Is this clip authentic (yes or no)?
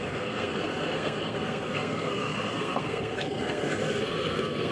no